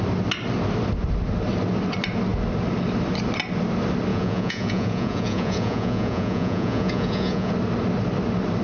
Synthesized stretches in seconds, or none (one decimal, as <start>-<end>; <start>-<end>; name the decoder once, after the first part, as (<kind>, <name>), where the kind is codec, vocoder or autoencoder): 4.1-7.5 (vocoder, Vocos)